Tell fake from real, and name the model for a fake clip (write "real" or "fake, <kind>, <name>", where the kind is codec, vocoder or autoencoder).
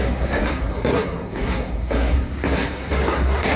fake, codec, SNAC